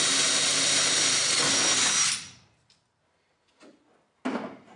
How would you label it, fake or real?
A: real